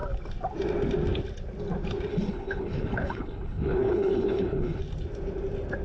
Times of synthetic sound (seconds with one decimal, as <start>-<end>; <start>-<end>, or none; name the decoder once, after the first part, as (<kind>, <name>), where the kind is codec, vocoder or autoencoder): 2.1-4.8 (codec, HILCodec)